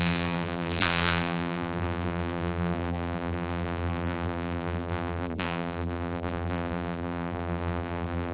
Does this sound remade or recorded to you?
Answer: remade